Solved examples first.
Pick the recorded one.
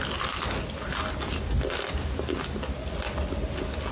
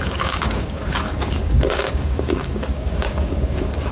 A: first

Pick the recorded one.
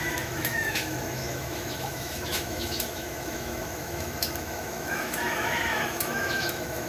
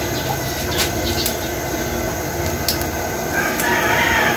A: second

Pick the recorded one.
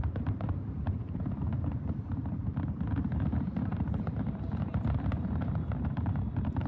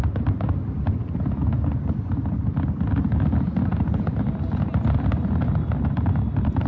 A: second